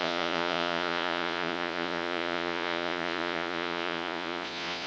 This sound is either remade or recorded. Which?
remade